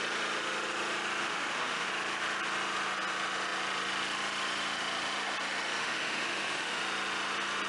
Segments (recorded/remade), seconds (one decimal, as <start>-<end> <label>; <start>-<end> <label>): 0.0-1.2 recorded; 1.2-1.9 remade; 1.9-5.8 recorded; 5.8-6.8 remade; 6.8-7.7 recorded